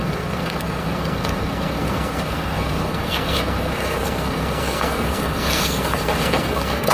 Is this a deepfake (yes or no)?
yes